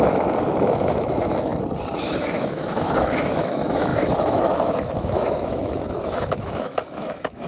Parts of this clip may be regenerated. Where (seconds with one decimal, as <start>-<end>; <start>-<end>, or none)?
0.0-1.5; 2.0-7.5